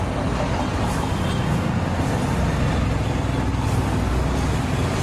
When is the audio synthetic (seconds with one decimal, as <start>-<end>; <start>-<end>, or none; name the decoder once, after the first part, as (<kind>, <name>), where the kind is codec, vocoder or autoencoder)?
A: none